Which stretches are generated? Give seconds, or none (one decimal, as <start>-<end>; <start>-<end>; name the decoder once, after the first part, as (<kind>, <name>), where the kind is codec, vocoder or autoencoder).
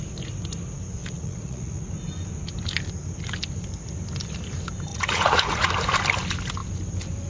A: 1.0-1.8 (vocoder, Vocos); 4.9-5.7